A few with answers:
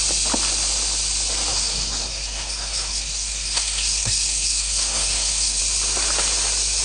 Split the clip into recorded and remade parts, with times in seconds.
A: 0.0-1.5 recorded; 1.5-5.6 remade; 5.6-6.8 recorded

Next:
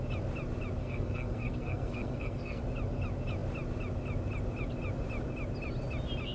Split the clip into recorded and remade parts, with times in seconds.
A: 0.0-0.8 recorded; 0.8-2.6 remade; 2.6-6.3 recorded

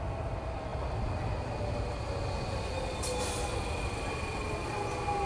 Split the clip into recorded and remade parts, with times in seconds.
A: 0.0-5.3 recorded

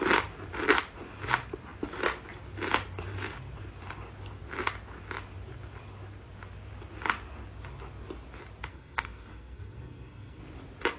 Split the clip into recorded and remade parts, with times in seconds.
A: 0.0-8.7 recorded; 8.7-10.4 remade; 10.4-11.0 recorded

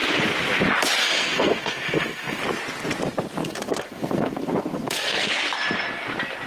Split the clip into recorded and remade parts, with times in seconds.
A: 0.0-1.0 recorded; 1.0-2.4 remade; 2.4-3.4 recorded; 3.4-5.3 remade; 5.3-6.5 recorded

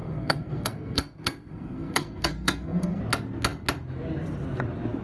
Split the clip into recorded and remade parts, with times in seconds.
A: 0.0-3.0 remade; 3.0-5.0 recorded

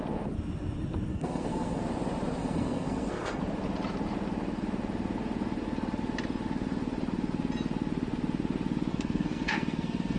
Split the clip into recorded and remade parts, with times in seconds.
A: 0.0-1.1 recorded; 1.1-1.8 remade; 1.8-2.4 recorded; 2.4-3.4 remade; 3.4-8.9 recorded; 8.9-10.2 remade

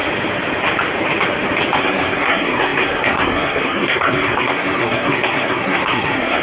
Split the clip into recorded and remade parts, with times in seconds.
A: 0.0-1.8 recorded; 1.8-6.4 remade